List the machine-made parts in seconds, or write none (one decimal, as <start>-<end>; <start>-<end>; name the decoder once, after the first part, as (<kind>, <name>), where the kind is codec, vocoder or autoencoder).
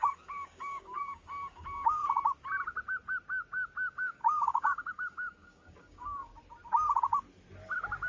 0.0-2.0 (codec, DAC); 3.9-6.3